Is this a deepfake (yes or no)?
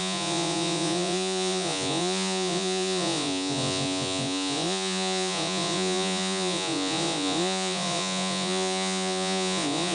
yes